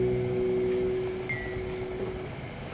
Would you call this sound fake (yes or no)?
no